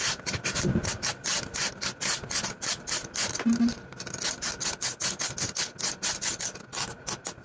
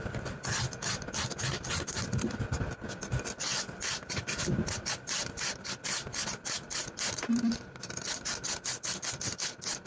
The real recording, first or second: first